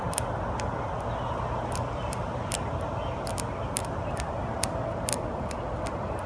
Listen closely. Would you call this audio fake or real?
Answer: real